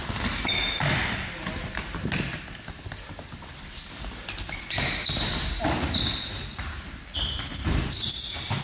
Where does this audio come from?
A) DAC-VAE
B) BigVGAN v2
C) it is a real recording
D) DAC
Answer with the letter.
C